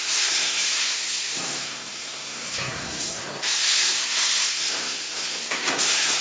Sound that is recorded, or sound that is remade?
remade